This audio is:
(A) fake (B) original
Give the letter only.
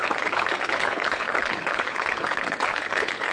A